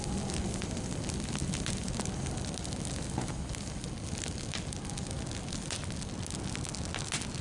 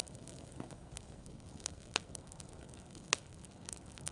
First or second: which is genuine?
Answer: first